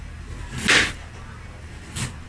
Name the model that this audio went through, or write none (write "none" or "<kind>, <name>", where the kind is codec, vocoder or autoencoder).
none